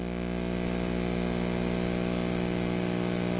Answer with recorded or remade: recorded